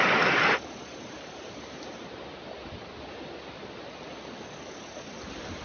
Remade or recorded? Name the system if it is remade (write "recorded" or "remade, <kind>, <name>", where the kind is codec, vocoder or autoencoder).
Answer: recorded